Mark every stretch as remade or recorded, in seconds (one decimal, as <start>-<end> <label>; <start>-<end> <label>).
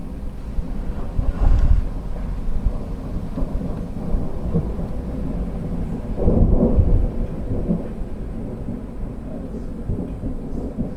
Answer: 0.0-4.6 remade; 4.6-6.2 recorded; 6.2-11.0 remade